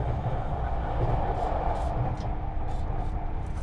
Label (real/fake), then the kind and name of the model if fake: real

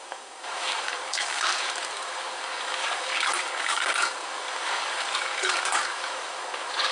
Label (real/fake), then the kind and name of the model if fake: fake, codec, DAC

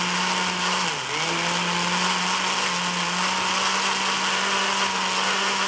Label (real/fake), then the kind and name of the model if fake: real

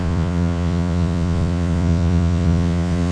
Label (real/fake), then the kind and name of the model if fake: fake, vocoder, Vocos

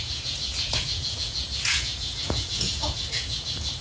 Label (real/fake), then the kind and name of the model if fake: fake, vocoder, Vocos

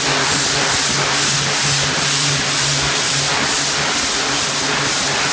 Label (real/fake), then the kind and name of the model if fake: real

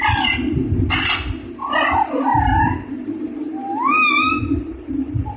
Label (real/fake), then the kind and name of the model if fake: real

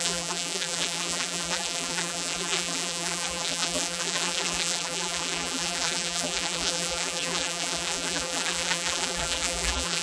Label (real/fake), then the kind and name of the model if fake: fake, vocoder, BigVGAN v2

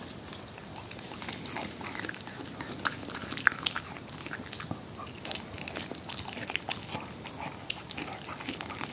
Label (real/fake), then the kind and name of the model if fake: real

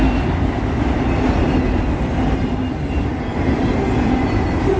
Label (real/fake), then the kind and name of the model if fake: real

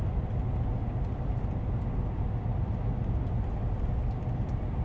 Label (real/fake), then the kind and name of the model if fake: real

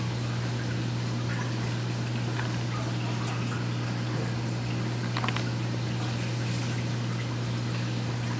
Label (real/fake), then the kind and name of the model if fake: real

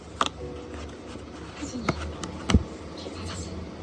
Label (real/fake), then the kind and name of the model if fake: real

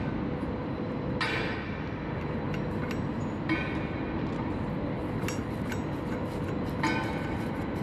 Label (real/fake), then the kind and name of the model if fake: real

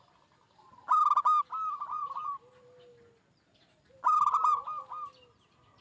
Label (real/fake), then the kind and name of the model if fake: real